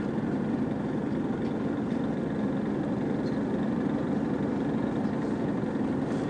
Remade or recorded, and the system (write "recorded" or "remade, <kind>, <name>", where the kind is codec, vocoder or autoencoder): recorded